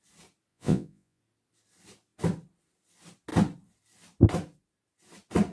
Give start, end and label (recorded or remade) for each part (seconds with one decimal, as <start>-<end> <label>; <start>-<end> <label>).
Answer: 0.0-0.5 recorded; 0.5-1.2 remade; 1.2-5.5 recorded